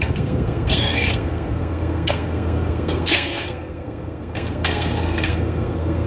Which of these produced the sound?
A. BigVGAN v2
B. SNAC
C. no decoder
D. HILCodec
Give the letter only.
B